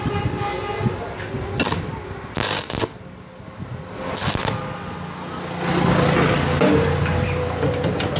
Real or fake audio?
real